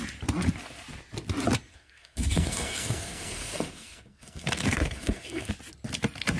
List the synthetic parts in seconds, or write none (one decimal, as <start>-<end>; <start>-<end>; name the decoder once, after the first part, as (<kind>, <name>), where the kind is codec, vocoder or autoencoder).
1.7-5.5 (codec, SNAC)